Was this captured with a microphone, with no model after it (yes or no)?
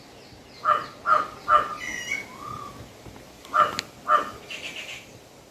yes